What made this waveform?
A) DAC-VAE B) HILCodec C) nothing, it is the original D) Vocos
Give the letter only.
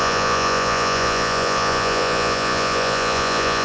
D